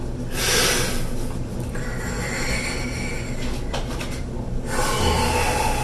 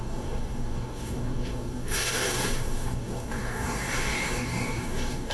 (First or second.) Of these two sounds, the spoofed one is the second